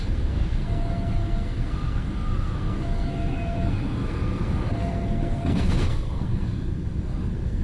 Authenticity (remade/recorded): remade